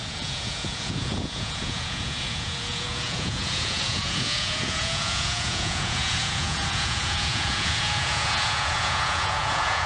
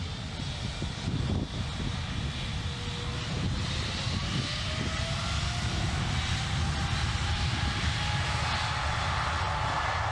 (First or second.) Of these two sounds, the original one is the second